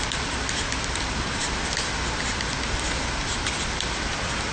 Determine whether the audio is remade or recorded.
recorded